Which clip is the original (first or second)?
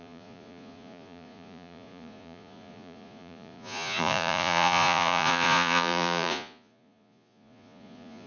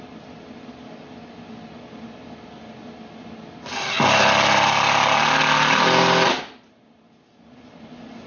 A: second